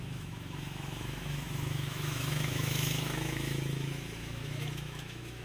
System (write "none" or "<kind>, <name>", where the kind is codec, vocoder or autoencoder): autoencoder, DAC-VAE